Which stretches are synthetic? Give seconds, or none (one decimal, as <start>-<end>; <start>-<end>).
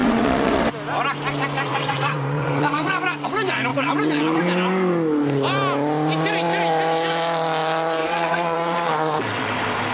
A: 0.0-0.6; 1.7-2.9; 3.7-4.4; 8.0-9.5